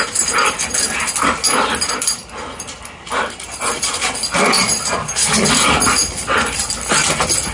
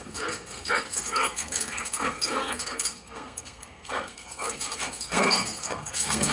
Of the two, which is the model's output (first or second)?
second